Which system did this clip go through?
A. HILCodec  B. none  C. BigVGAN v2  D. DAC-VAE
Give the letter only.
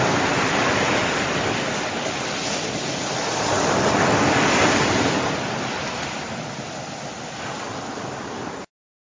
B